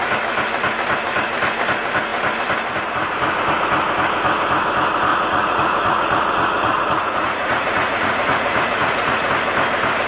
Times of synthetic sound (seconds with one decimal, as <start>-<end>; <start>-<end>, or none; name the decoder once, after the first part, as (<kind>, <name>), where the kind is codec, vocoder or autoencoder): 5.1-9.3 (vocoder, Vocos)